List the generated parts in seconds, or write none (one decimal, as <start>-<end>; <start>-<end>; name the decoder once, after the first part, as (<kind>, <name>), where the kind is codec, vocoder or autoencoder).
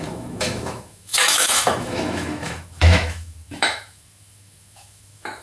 0.0-5.4 (autoencoder, DAC-VAE)